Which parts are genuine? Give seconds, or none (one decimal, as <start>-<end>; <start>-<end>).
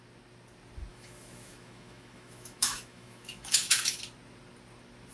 0.0-0.9; 4.0-5.1